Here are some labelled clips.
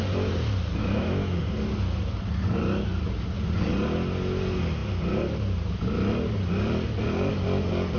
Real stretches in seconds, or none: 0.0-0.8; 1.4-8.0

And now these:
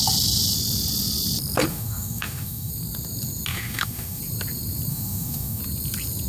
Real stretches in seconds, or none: 0.0-1.7; 2.7-3.5; 4.2-4.9; 5.6-6.3